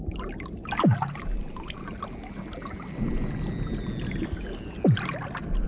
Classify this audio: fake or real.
real